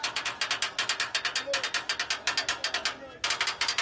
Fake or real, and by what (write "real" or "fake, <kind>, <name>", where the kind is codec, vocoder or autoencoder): real